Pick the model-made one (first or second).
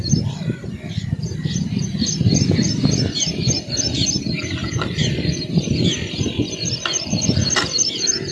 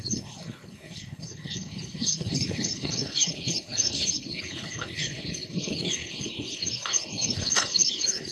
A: second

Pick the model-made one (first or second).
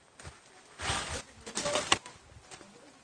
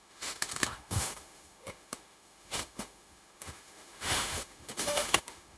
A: second